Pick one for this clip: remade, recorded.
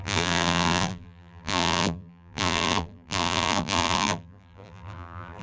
remade